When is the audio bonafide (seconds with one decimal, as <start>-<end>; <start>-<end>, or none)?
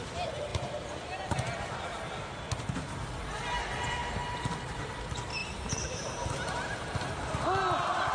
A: 0.0-8.1